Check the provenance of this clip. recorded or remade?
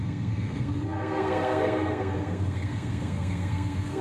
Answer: remade